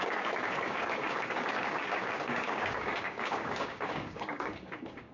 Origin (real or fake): fake